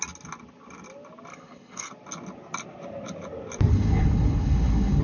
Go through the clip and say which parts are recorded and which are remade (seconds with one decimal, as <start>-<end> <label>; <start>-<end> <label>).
0.0-1.3 recorded; 1.3-1.9 remade; 1.9-3.7 recorded; 3.7-5.0 remade